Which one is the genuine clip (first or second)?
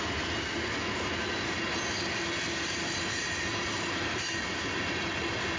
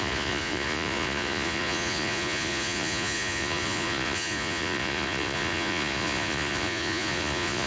first